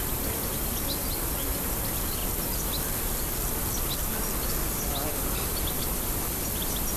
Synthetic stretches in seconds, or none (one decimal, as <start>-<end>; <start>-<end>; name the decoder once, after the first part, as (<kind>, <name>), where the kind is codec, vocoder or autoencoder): none